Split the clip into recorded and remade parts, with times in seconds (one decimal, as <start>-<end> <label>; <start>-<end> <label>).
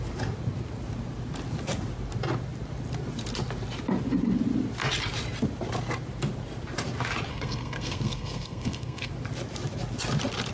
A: 0.0-7.3 recorded; 7.3-9.1 remade; 9.1-10.5 recorded